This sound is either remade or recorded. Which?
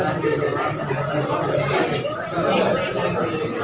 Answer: recorded